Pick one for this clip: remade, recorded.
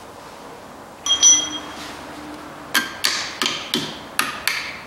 recorded